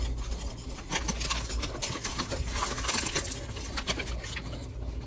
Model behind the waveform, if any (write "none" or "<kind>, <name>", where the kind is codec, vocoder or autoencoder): none